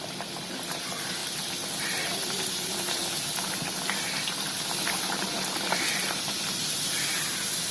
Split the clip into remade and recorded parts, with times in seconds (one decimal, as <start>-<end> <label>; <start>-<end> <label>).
0.0-1.2 remade; 1.2-1.8 recorded; 1.8-3.0 remade; 3.0-4.9 recorded; 4.9-7.7 remade